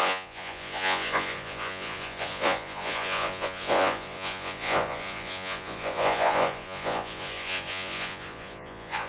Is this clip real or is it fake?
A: fake